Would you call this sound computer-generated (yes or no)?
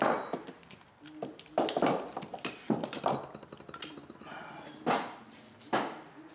no